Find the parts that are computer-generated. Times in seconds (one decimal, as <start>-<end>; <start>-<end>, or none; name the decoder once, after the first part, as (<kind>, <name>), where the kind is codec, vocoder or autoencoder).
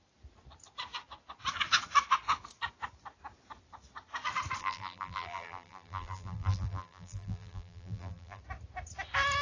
4.6-8.4 (vocoder, BigVGAN v2)